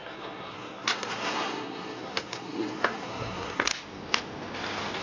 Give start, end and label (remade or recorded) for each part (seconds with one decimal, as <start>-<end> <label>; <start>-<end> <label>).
0.0-3.7 remade; 3.7-5.0 recorded